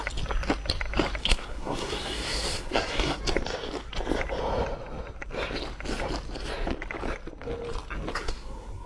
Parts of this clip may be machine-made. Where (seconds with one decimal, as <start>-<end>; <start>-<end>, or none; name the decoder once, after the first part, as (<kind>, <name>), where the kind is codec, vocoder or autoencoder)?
1.2-3.2 (codec, SNAC); 8.1-8.9